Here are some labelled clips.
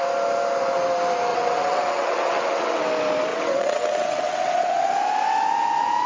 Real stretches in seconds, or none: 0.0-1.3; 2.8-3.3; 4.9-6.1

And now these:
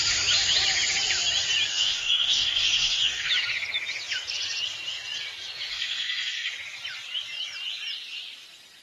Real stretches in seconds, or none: 0.0-1.7; 3.3-5.7; 6.5-8.8

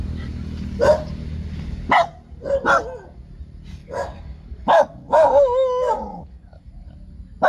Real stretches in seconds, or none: 0.0-3.8; 6.7-7.5

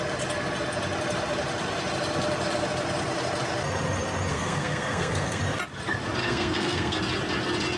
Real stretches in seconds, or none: 0.0-4.3; 5.4-6.2; 7.0-7.8

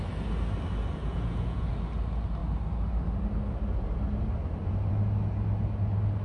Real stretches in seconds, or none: 0.0-1.0; 1.7-6.2